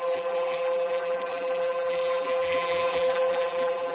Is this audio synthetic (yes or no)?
yes